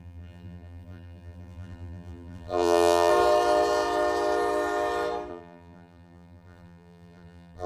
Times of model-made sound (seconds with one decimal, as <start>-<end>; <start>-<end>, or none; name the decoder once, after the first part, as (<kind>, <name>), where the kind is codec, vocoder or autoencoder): 0.0-3.1 (vocoder, BigVGAN v2); 5.3-7.7